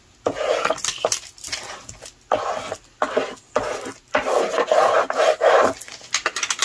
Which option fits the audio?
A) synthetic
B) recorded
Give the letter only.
B